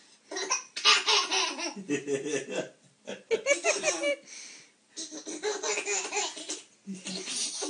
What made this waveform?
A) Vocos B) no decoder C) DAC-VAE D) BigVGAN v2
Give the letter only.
B